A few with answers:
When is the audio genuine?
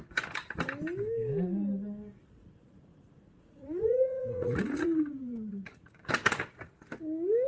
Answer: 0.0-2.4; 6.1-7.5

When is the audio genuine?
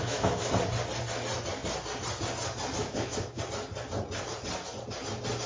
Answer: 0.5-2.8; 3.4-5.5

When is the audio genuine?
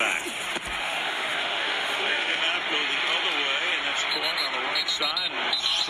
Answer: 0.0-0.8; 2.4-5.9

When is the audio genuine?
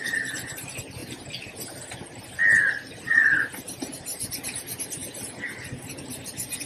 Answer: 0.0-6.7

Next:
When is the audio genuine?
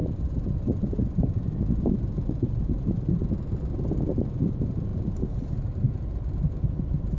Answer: 3.2-4.4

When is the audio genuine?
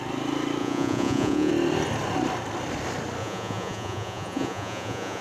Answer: 0.0-0.6; 1.5-3.2